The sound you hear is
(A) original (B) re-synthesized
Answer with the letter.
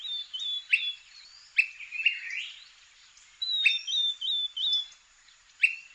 A